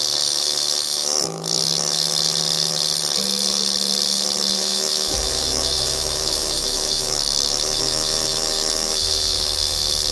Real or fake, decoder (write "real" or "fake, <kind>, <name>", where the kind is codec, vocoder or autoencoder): fake, autoencoder, DAC-VAE